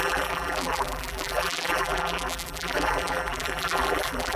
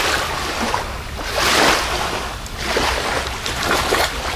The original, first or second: second